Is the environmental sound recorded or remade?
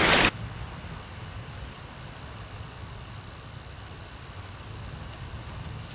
recorded